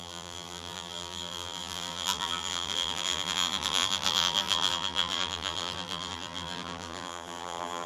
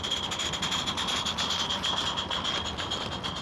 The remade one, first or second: first